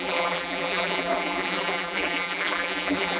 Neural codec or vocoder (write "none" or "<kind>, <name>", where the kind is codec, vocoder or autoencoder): vocoder, BigVGAN v2